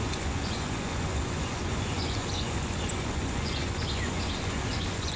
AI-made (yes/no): yes